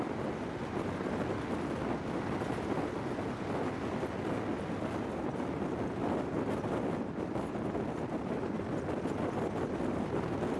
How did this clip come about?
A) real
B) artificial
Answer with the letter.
A